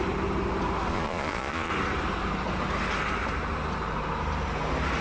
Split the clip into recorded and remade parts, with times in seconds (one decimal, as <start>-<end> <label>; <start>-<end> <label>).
0.0-0.9 recorded; 0.9-1.7 remade; 1.7-5.0 recorded